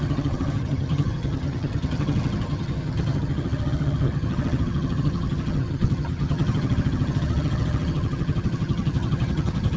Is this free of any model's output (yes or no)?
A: no